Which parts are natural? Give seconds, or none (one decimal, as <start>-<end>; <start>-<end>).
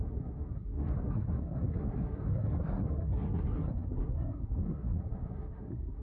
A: none